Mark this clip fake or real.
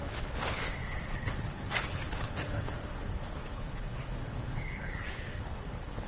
fake